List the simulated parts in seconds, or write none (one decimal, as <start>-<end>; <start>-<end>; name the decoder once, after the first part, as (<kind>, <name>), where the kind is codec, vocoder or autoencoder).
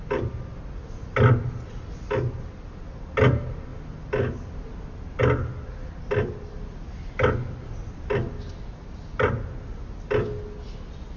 none